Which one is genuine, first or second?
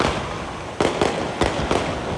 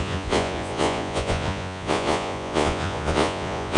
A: first